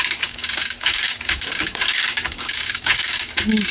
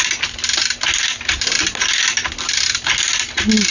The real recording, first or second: second